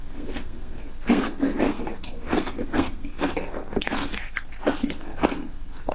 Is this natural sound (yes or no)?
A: no